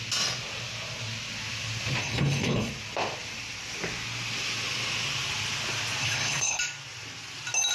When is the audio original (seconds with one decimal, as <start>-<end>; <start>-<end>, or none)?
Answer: 0.0-2.0; 2.7-6.0; 6.6-7.7